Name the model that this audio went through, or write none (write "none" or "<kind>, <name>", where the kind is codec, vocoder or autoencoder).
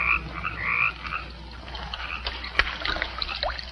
none